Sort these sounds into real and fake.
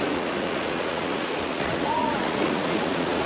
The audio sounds fake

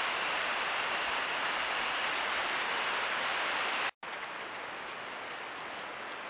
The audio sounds real